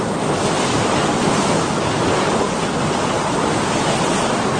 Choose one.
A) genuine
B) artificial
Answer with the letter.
A